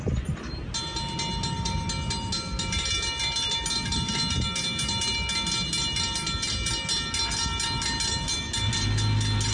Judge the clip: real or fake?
real